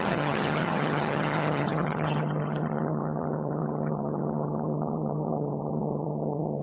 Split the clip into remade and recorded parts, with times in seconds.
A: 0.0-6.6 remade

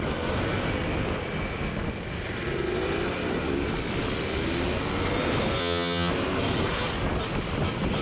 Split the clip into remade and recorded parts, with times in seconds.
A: 0.0-5.6 recorded; 5.6-6.1 remade; 6.1-8.0 recorded

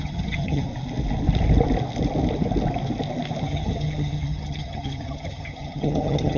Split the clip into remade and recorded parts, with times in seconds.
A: 0.0-0.7 remade; 0.7-3.4 recorded; 3.4-6.4 remade

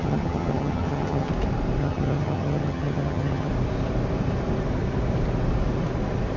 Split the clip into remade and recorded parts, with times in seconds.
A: 0.0-1.3 remade; 1.3-1.8 recorded; 1.8-3.5 remade; 3.5-6.4 recorded

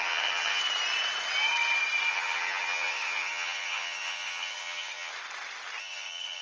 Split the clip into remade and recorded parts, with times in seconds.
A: 0.0-0.6 remade; 0.6-2.1 recorded; 2.1-5.1 remade; 5.1-5.8 recorded; 5.8-6.4 remade

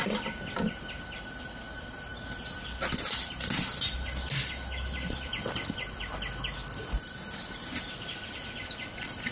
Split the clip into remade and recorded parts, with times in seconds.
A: 0.0-9.3 recorded